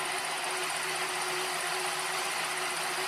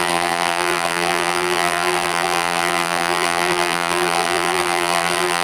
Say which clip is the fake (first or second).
second